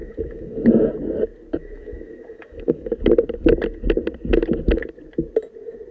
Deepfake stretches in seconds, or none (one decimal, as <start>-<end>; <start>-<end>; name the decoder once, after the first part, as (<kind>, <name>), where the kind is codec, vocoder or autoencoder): 0.0-0.9 (autoencoder, DAC-VAE); 1.6-2.9